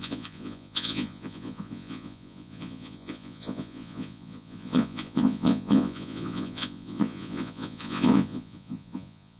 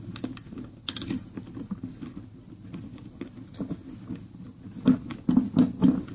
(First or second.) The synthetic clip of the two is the first